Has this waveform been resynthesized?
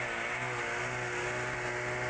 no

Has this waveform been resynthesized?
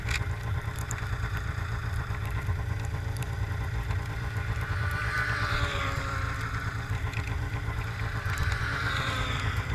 yes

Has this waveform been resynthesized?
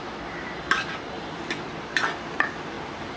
yes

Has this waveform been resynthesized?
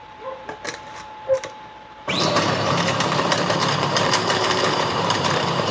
yes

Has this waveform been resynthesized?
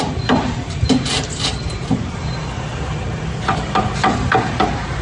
yes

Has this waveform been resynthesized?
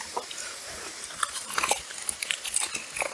no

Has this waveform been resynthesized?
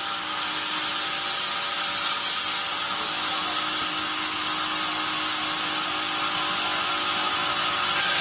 no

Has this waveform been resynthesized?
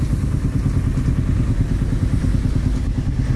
no